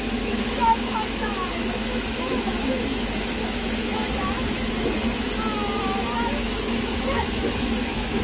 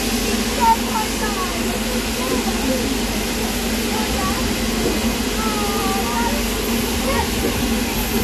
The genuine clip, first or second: second